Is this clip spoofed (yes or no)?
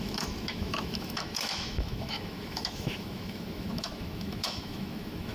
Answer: yes